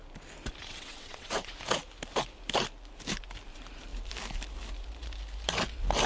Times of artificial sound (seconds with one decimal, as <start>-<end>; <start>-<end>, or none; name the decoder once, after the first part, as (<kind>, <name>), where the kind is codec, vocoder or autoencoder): 0.6-1.5 (vocoder, WaveNeXt)